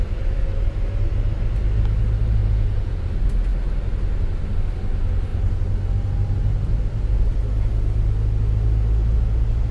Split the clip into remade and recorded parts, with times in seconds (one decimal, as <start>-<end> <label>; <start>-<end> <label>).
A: 0.0-2.4 recorded; 2.4-3.0 remade; 3.0-9.7 recorded